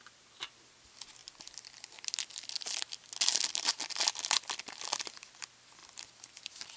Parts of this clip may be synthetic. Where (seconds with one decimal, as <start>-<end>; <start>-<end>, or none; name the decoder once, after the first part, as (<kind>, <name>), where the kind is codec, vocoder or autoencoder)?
none